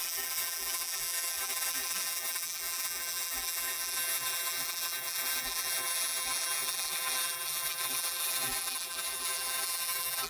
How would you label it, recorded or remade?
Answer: remade